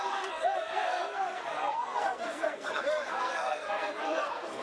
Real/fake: fake